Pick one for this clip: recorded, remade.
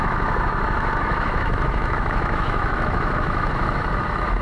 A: remade